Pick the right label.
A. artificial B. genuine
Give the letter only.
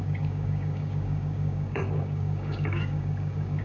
A